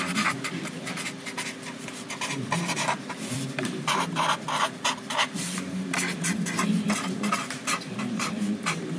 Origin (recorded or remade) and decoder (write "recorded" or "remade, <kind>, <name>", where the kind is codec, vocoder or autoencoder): remade, vocoder, BigVGAN v2